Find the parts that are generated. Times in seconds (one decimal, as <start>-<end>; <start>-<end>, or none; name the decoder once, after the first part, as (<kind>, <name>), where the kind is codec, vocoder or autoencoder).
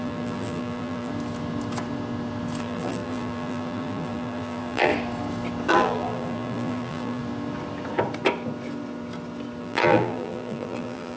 0.0-1.1 (vocoder, BigVGAN v2); 2.6-4.9; 5.7-7.2; 9.6-11.2